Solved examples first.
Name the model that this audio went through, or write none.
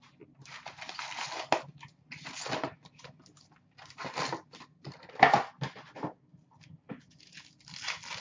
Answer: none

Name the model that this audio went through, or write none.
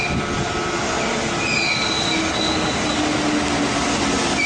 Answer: none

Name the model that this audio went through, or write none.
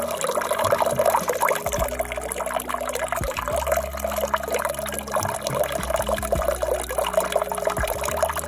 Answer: none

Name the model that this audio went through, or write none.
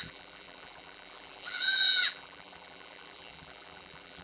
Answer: vocoder, BigVGAN v2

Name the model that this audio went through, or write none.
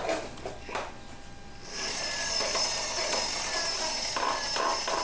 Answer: none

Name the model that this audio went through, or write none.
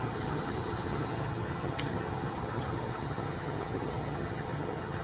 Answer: vocoder, HiFi-GAN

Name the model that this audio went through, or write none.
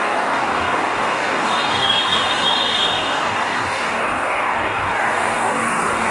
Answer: codec, DAC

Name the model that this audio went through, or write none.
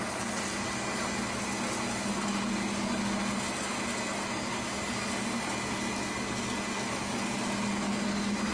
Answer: none